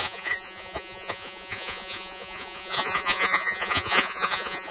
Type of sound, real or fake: fake